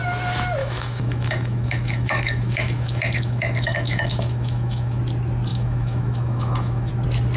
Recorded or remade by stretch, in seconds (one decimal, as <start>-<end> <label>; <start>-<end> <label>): 0.0-0.6 recorded; 0.6-5.0 remade; 5.0-5.5 recorded; 5.5-6.9 remade; 6.9-7.4 recorded